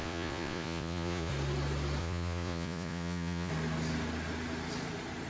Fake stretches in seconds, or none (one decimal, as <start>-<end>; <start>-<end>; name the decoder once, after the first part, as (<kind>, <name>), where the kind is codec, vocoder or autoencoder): 0.0-1.3 (vocoder, Vocos); 2.0-3.5